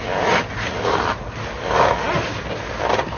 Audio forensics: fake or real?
real